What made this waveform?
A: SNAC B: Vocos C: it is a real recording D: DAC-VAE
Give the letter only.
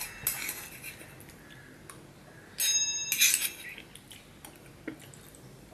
C